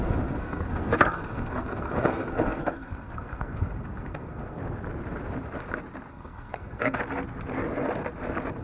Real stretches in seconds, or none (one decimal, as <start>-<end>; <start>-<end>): 4.6-6.1; 7.0-8.6